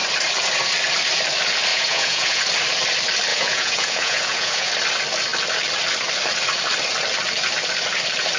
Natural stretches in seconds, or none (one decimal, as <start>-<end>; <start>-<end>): 0.0-1.7; 2.4-3.3; 4.7-8.4